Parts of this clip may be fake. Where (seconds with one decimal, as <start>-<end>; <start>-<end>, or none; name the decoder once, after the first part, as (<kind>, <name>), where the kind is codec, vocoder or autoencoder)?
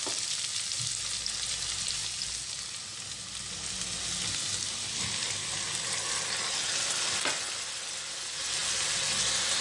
none